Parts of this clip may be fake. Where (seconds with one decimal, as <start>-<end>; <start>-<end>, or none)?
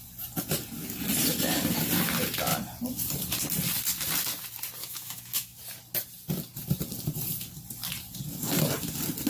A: 4.8-5.6